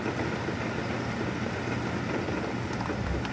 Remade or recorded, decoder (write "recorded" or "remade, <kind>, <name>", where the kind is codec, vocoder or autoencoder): recorded